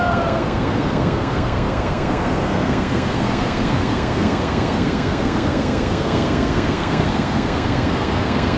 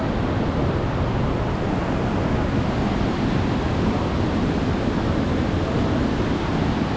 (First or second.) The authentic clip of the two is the second